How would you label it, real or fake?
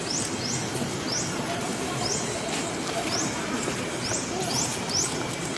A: real